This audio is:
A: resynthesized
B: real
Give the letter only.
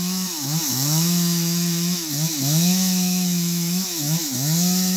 A